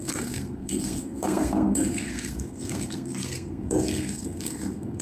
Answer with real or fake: fake